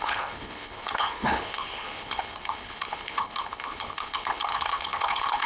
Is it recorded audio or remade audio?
remade